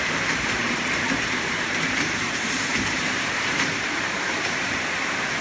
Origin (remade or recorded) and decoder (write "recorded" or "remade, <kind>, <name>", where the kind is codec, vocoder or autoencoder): remade, vocoder, BigVGAN v2